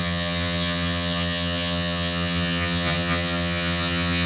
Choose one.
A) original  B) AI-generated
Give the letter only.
B